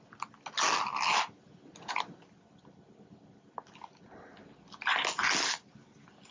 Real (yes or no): yes